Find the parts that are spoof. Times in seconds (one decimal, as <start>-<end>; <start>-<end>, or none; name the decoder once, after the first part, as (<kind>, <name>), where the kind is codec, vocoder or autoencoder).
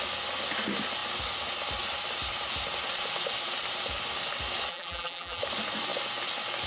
4.7-5.4 (vocoder, BigVGAN v2)